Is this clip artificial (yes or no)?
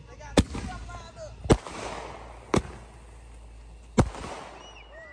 no